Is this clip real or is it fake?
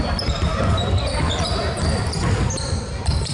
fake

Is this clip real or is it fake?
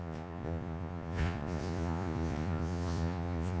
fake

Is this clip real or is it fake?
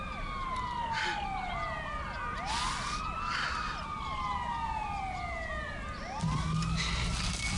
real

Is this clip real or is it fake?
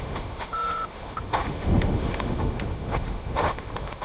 fake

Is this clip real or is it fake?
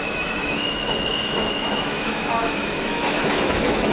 fake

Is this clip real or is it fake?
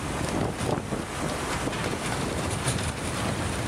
real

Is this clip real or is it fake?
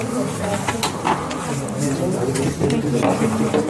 real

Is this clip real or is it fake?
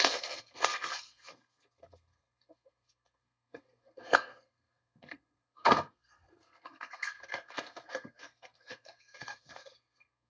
fake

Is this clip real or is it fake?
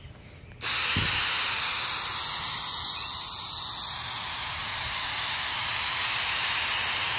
real